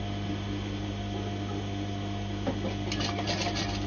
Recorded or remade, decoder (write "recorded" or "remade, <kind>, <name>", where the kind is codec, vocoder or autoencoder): recorded